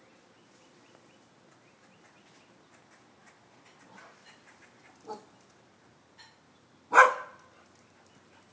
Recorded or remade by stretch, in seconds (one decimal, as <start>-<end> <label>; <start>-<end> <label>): 0.0-8.5 recorded